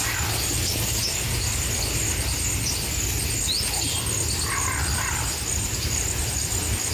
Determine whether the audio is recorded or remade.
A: recorded